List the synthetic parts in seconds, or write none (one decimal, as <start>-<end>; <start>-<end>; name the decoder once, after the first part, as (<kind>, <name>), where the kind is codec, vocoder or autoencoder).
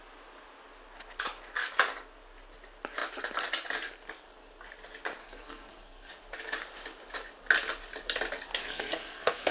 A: 5.2-6.1 (codec, SNAC); 8.6-9.5